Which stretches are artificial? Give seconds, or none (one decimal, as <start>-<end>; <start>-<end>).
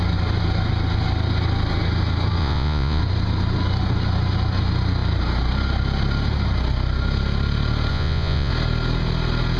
2.4-3.0; 7.9-8.5